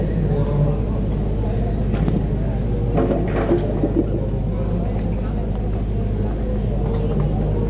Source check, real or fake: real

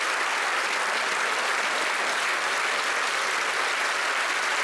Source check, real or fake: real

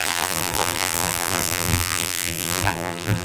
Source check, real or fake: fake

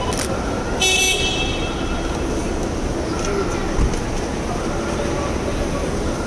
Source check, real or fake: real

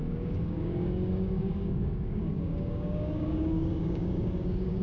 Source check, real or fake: fake